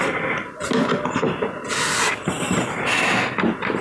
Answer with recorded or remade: recorded